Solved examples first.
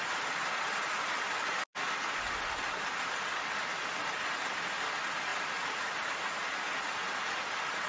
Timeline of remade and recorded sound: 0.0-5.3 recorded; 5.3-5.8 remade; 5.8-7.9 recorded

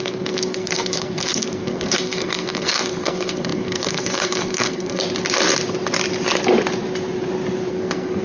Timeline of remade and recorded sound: 0.0-5.0 remade; 5.0-7.7 recorded; 7.7-8.2 remade

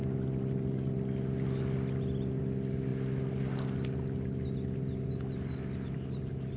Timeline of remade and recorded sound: 0.0-6.6 recorded

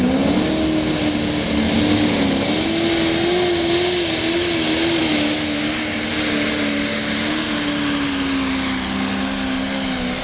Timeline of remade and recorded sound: 0.0-5.0 recorded; 5.0-5.6 remade; 5.6-10.2 recorded